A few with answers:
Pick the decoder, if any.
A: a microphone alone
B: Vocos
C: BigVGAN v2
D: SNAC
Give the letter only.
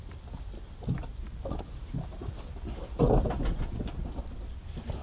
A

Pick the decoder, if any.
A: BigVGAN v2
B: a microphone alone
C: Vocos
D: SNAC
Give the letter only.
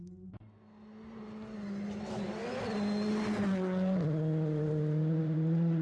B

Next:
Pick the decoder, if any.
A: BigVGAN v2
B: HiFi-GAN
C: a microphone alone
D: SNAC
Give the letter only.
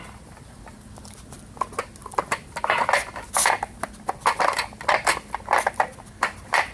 C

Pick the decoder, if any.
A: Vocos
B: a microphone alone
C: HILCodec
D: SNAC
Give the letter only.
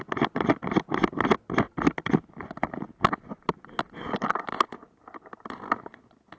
B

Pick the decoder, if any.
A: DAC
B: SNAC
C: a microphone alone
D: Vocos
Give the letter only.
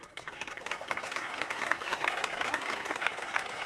B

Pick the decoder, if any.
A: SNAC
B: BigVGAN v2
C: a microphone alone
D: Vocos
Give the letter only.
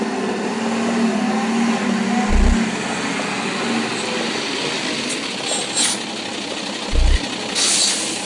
C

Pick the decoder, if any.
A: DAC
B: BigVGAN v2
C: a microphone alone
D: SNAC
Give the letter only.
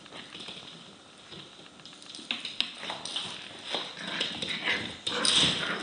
C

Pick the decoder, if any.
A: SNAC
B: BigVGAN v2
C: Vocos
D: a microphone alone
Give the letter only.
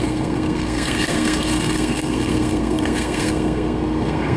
A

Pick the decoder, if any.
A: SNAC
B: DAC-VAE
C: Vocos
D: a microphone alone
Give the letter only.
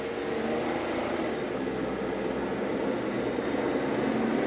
D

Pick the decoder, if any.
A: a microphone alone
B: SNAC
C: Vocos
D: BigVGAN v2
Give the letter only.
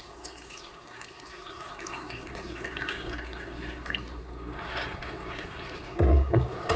B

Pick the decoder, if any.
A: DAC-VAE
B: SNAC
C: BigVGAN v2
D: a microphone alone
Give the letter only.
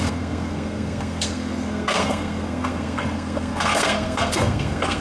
B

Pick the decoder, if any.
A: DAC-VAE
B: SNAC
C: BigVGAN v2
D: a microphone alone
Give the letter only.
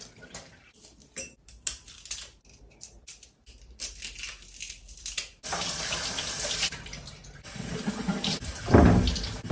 D